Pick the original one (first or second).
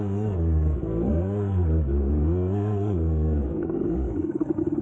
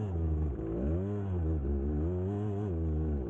second